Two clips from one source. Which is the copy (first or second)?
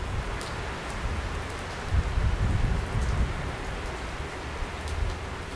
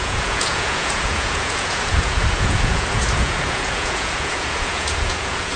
second